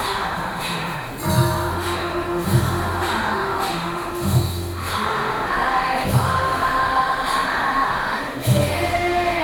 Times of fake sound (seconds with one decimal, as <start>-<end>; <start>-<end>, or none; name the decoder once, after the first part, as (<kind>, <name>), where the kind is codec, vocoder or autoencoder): 0.0-1.1 (autoencoder, DAC-VAE); 1.7-9.4